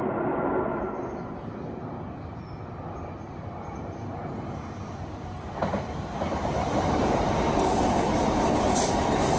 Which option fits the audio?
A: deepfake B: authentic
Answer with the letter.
B